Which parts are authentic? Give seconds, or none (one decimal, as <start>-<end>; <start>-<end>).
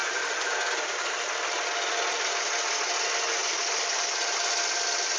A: 1.3-3.4; 4.4-5.2